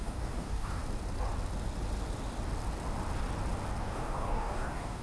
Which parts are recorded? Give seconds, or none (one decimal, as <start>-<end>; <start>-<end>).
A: 0.8-3.8